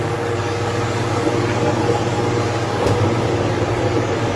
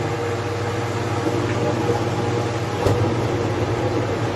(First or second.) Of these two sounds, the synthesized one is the first